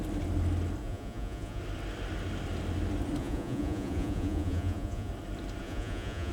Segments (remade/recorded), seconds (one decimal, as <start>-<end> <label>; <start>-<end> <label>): 0.0-0.8 recorded; 0.8-1.6 remade; 1.6-3.2 recorded; 3.2-5.1 remade; 5.1-5.6 recorded; 5.6-6.3 remade